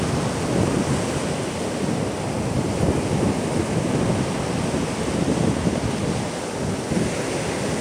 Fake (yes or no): no